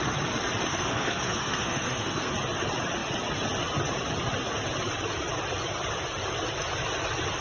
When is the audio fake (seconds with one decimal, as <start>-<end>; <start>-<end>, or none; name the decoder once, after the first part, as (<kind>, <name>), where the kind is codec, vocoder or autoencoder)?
0.7-2.3 (codec, SNAC)